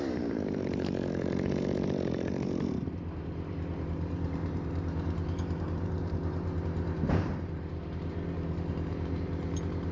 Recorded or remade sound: remade